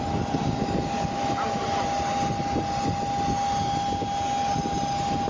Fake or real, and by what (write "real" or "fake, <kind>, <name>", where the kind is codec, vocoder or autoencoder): real